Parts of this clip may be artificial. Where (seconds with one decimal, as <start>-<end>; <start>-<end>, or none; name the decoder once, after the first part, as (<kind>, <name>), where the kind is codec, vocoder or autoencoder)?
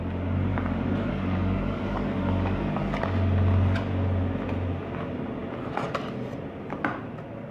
0.5-3.0 (codec, DAC)